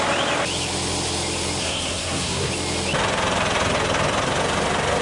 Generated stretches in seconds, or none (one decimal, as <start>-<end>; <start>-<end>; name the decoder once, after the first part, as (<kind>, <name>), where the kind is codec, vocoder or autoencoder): 1.6-2.5 (codec, SNAC)